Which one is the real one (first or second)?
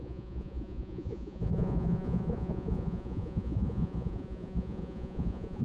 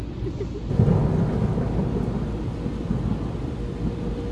second